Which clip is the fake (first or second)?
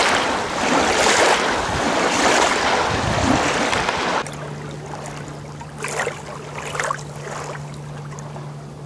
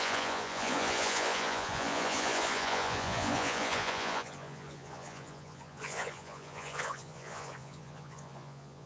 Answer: second